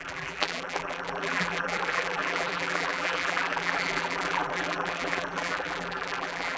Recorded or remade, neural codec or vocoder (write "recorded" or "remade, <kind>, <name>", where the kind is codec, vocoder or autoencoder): remade, vocoder, BigVGAN v2